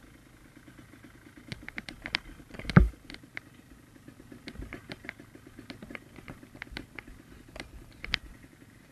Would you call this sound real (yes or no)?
yes